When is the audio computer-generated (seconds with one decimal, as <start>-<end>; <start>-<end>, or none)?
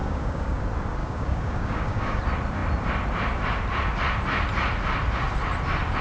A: 0.0-0.6; 1.0-2.2